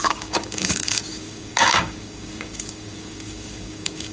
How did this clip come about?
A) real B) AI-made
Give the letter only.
B